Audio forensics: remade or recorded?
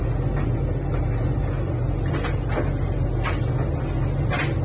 recorded